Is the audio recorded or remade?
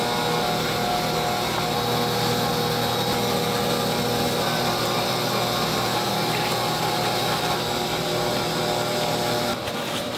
recorded